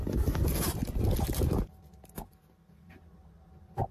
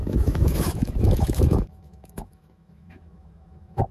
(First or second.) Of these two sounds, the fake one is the second